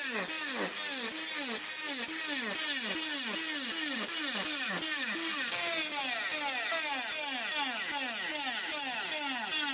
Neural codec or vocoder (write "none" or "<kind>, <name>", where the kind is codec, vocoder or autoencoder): none